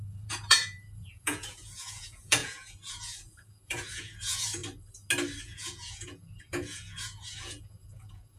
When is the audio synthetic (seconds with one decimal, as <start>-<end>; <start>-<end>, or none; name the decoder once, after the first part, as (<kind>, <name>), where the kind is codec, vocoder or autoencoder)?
0.0-4.6 (vocoder, Vocos); 5.4-8.4